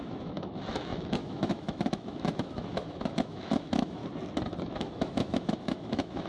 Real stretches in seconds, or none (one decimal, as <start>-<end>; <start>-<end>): 4.0-4.6